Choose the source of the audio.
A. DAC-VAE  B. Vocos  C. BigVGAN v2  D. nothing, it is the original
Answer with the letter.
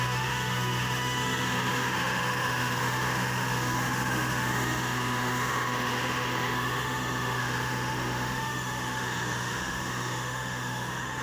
A